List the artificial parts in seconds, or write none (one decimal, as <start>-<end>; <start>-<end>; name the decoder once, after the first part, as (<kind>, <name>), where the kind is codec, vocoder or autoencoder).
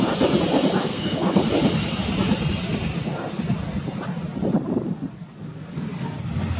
0.9-1.5 (codec, SNAC)